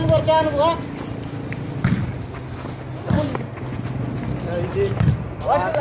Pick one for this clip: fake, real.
real